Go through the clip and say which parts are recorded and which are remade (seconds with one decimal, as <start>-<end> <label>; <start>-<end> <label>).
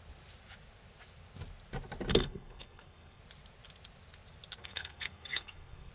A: 0.0-2.1 recorded; 2.1-3.2 remade; 3.2-4.6 recorded; 4.6-5.9 remade